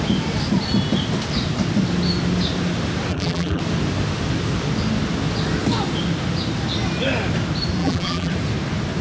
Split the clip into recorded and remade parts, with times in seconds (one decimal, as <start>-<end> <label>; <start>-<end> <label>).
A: 0.0-3.1 recorded; 3.1-3.6 remade; 3.6-7.8 recorded; 7.8-8.3 remade; 8.3-9.0 recorded